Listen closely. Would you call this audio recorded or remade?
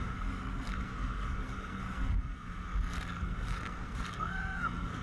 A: remade